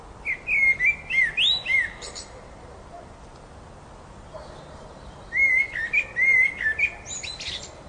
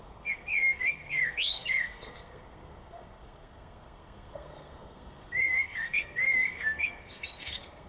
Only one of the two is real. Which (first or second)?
first